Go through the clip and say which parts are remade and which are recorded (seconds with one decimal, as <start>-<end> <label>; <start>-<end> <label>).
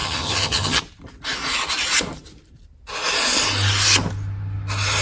0.0-0.8 remade; 0.8-5.0 recorded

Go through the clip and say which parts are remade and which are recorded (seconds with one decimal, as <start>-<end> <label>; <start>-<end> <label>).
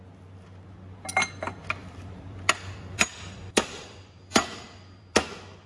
0.0-1.8 recorded; 1.8-5.2 remade; 5.2-5.7 recorded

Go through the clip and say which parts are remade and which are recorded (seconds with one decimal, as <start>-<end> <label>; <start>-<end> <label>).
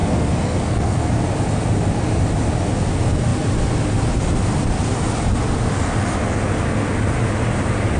0.0-1.1 remade; 1.1-8.0 recorded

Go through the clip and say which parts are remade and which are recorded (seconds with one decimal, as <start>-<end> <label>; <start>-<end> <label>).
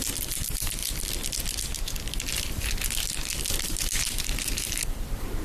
0.0-0.8 remade; 0.8-3.6 recorded; 3.6-5.4 remade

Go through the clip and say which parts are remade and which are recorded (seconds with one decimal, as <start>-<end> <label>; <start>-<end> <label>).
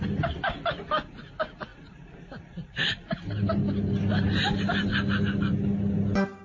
0.0-6.4 recorded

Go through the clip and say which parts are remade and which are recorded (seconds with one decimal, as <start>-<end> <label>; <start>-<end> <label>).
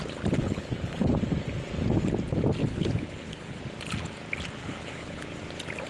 0.0-0.4 recorded; 0.4-1.1 remade; 1.1-2.6 recorded; 2.6-3.6 remade; 3.6-4.6 recorded; 4.6-5.2 remade; 5.2-5.9 recorded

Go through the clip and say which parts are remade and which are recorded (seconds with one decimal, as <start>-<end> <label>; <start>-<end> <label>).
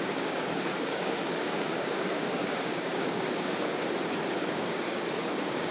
0.0-3.8 remade; 3.8-4.3 recorded; 4.3-5.7 remade